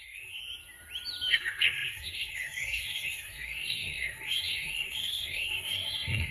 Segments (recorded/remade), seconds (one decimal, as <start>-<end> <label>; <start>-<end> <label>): 0.0-0.4 remade; 0.4-1.3 recorded; 1.3-6.3 remade